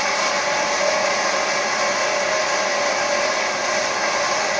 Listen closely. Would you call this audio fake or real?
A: real